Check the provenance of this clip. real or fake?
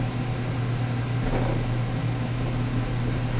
real